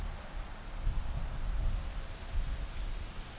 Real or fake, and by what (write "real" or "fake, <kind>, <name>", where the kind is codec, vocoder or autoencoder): real